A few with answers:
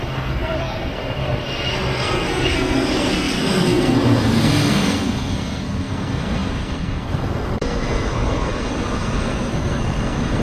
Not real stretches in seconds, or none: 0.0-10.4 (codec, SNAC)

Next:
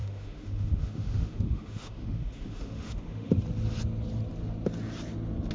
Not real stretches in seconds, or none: 0.0-3.3 (autoencoder, DAC-VAE)

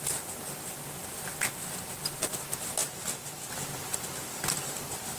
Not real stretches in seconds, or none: none